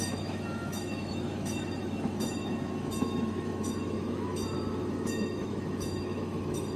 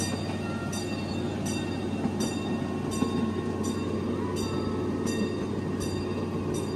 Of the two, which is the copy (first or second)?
first